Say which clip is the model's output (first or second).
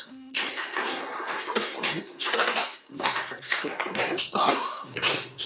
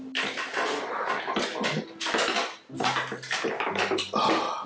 first